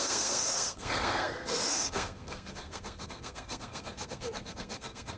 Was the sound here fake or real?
fake